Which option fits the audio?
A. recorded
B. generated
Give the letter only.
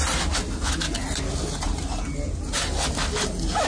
A